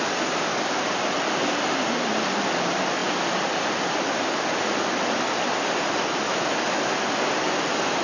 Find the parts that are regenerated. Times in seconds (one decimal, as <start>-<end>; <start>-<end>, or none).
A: none